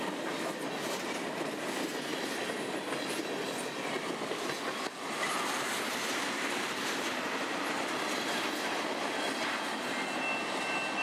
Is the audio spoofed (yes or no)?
no